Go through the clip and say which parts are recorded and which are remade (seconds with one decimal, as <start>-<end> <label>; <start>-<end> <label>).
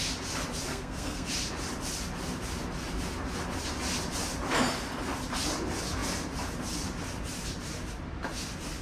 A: 0.0-0.7 recorded; 0.7-1.3 remade; 1.3-8.8 recorded